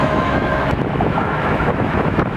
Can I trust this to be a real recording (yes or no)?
no